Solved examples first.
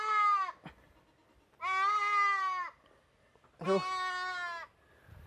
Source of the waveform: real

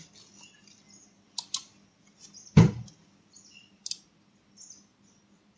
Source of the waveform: real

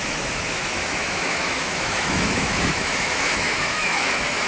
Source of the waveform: fake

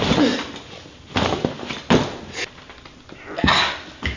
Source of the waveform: real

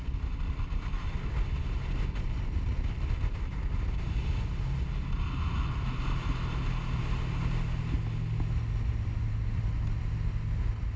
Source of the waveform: real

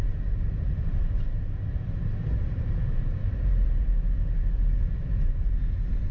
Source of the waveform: fake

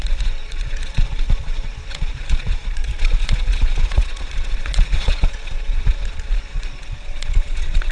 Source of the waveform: fake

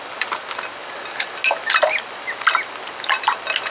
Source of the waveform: real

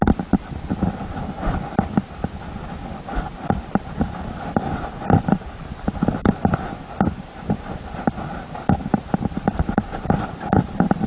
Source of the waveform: real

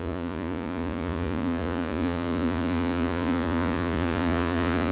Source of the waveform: fake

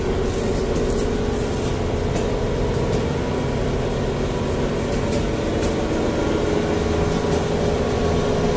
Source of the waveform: real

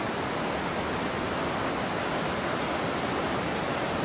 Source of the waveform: real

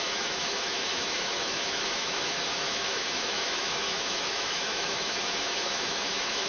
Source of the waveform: fake